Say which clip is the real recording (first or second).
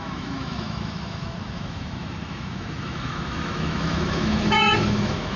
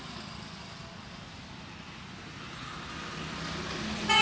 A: second